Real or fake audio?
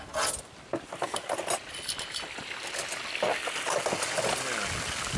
real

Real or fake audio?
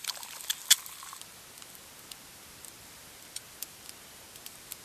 real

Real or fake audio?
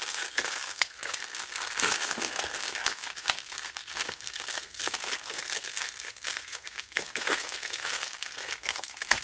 fake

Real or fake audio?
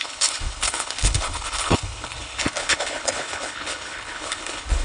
fake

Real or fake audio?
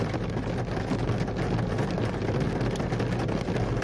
real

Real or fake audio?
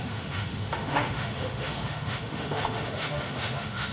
fake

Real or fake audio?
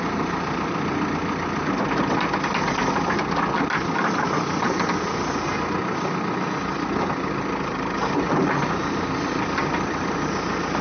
real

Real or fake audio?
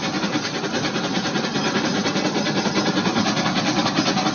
real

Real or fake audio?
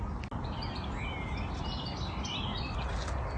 real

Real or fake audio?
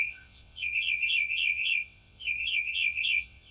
fake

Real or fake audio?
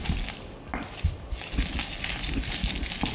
real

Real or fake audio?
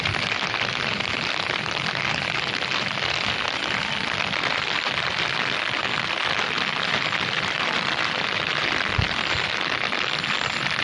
fake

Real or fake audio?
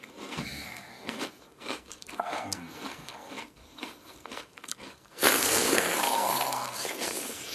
fake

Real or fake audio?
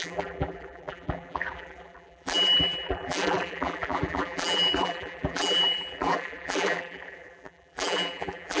fake